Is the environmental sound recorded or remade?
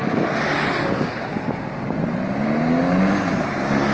recorded